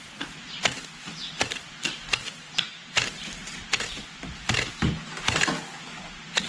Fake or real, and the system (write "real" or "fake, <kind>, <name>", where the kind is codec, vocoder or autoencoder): real